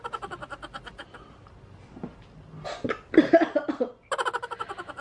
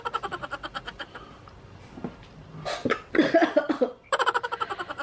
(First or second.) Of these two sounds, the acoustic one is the first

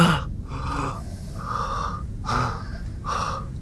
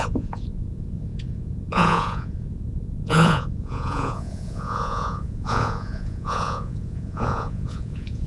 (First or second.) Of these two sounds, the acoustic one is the first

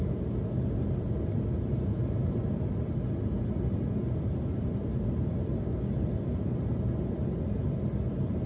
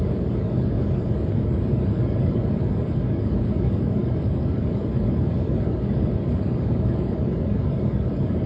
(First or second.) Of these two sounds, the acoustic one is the first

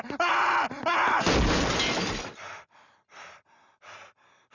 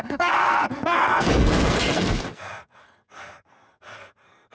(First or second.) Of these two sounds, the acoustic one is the first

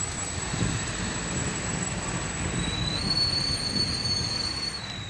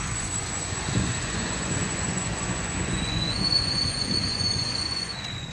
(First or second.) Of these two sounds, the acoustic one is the first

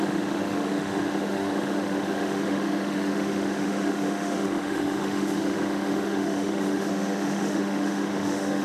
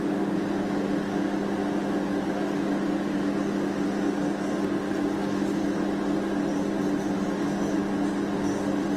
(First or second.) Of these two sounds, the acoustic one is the second